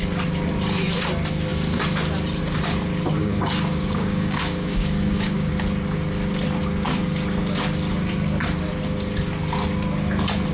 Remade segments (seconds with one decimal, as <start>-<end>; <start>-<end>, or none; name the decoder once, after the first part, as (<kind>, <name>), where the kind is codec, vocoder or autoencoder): 3.2-5.5 (codec, DAC)